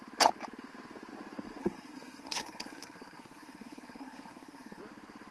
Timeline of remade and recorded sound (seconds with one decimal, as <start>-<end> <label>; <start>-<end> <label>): 0.0-1.6 recorded; 1.6-4.8 remade; 4.8-5.3 recorded